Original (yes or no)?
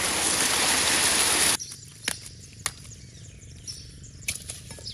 yes